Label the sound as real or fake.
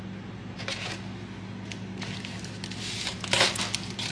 real